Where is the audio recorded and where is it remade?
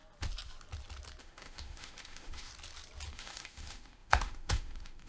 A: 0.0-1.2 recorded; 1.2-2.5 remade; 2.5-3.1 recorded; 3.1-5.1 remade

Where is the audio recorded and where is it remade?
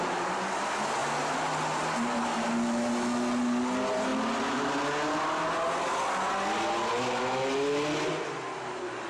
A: 0.0-9.1 recorded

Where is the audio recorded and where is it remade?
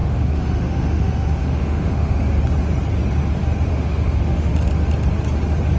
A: 0.0-2.4 remade; 2.4-3.7 recorded; 3.7-4.5 remade; 4.5-5.8 recorded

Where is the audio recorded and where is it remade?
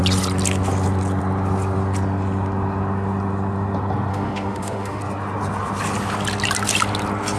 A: 0.0-4.1 recorded; 4.1-5.0 remade; 5.0-7.4 recorded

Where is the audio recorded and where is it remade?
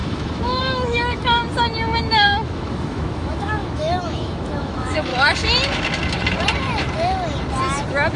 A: 0.0-1.4 remade; 1.4-2.0 recorded; 2.0-5.1 remade; 5.1-8.2 recorded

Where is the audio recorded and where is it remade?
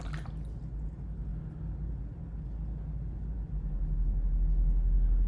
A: 0.0-5.3 recorded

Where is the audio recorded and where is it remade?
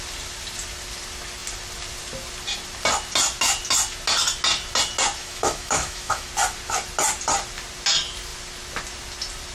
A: 0.0-5.2 recorded; 5.2-6.3 remade; 6.3-9.5 recorded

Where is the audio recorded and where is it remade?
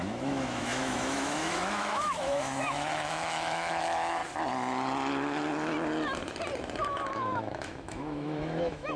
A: 0.0-4.2 remade; 4.2-7.1 recorded; 7.1-9.0 remade